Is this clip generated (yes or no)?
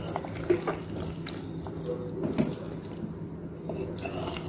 no